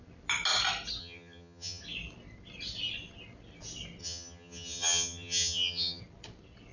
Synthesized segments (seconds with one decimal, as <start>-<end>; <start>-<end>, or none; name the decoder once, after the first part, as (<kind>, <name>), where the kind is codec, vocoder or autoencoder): 1.0-1.8 (vocoder, HiFi-GAN); 4.0-6.0

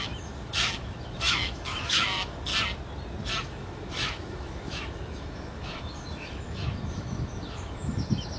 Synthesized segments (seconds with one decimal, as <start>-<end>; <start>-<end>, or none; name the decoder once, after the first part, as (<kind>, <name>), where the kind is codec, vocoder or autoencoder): 0.0-2.5 (autoencoder, DAC-VAE); 3.4-8.4

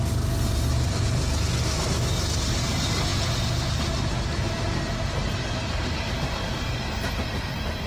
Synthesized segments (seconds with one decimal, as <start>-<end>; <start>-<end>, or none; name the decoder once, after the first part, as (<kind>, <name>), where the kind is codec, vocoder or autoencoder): none

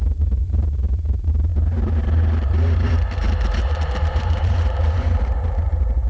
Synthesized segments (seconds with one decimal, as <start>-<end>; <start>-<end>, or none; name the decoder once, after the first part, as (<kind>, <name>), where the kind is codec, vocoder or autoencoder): 0.0-6.1 (vocoder, BigVGAN v2)

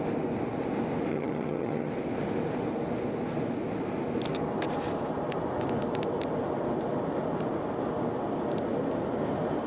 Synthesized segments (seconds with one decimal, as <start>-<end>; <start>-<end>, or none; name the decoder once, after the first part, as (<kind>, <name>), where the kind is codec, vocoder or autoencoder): 1.1-1.9 (vocoder, HiFi-GAN)

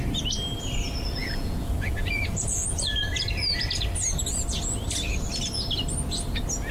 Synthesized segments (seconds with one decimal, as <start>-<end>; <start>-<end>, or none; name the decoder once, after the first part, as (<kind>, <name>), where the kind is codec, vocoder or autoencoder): 1.2-3.0 (vocoder, Vocos)

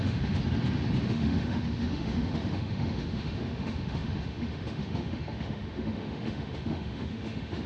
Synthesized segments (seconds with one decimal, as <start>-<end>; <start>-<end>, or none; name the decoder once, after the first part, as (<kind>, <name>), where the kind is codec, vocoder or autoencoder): 0.0-0.4 (autoencoder, DAC-VAE); 1.0-7.7

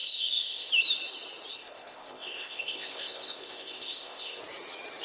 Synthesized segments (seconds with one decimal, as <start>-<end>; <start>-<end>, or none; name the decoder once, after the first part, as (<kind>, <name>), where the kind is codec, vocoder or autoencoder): 0.0-0.7 (codec, ZipCodec); 1.5-4.4